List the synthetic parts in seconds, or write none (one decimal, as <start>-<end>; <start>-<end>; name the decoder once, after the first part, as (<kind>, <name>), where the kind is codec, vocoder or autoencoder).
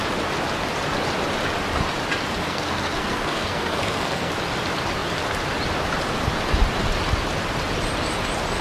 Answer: 2.4-4.3 (codec, SNAC)